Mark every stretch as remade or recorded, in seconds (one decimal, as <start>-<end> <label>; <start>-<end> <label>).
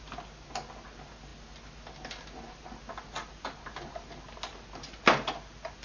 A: 0.0-5.8 recorded